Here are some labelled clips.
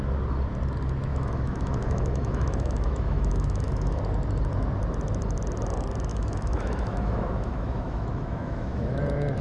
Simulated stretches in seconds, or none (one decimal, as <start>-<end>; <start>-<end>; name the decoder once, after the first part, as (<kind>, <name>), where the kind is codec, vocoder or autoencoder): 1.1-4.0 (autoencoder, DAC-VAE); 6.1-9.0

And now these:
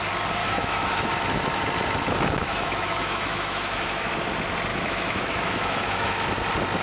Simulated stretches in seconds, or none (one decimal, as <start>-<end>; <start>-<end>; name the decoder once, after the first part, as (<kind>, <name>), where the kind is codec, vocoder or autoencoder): 0.4-1.1 (autoencoder, DAC-VAE); 2.4-4.1; 4.7-6.2

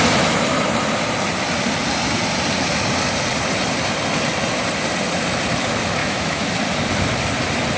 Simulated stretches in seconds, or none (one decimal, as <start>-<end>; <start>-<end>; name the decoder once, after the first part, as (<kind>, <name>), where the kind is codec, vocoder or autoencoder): 6.0-6.5 (autoencoder, DAC-VAE)

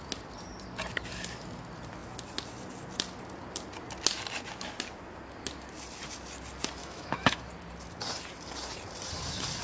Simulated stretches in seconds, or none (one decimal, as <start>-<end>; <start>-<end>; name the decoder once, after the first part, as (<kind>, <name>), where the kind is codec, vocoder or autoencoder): 6.8-7.5 (autoencoder, DAC-VAE)